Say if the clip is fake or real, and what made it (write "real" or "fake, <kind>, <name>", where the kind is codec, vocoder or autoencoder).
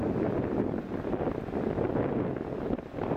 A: real